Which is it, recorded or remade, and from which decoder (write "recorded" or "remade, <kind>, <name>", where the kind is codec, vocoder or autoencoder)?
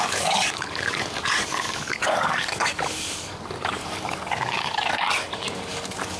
remade, codec, DAC